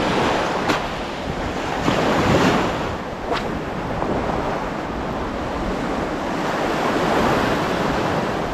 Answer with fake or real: real